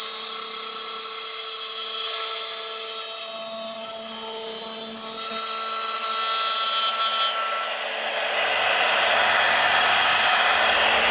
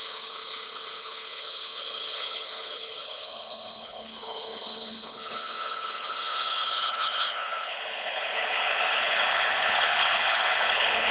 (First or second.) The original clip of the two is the first